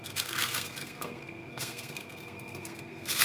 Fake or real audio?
fake